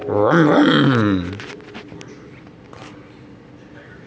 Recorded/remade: recorded